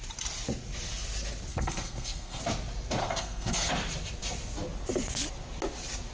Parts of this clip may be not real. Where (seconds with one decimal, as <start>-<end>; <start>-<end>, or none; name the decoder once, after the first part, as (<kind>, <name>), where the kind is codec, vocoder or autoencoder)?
1.5-2.4 (codec, SNAC); 3.0-3.7